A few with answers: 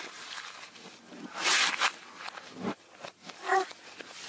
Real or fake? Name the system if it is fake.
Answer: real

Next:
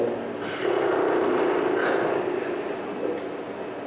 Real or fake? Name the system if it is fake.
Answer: real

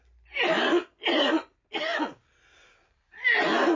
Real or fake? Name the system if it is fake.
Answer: real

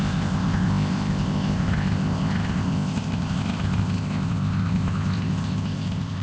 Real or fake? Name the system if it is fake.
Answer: fake, codec, ZipCodec